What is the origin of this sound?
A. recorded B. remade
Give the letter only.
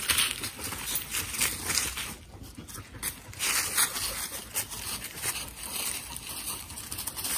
A